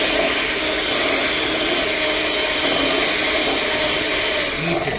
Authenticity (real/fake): real